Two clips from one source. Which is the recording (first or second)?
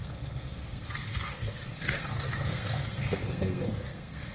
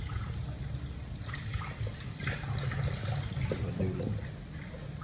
second